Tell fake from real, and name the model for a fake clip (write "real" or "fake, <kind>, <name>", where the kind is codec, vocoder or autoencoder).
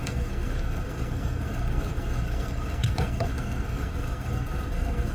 fake, codec, SNAC